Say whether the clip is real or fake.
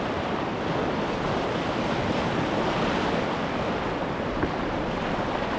real